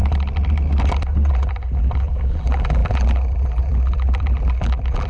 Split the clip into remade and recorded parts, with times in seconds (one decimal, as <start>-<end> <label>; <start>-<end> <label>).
0.0-1.3 recorded; 1.3-5.1 remade